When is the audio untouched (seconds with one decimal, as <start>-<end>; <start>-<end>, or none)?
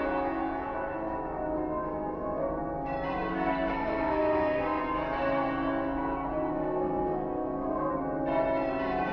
0.0-3.3; 4.8-6.5; 7.9-9.1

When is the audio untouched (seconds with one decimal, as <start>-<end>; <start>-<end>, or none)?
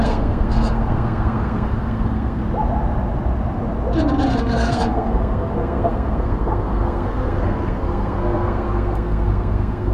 2.4-4.3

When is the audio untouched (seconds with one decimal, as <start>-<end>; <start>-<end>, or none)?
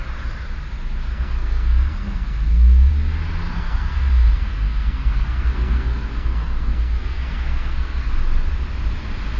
0.0-1.1; 2.9-3.5; 8.1-9.4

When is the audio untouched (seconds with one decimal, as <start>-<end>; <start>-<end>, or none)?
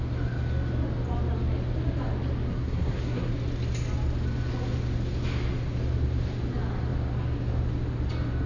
0.0-2.5; 3.3-8.5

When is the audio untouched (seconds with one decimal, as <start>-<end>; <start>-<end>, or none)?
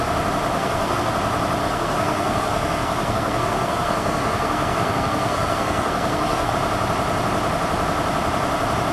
0.0-0.5; 1.1-1.6; 6.5-8.9